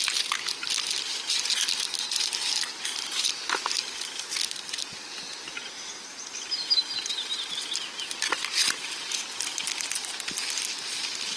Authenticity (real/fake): real